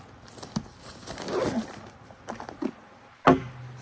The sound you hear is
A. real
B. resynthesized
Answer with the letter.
A